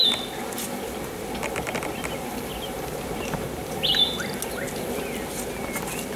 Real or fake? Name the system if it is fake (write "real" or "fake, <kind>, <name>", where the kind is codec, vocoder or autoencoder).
real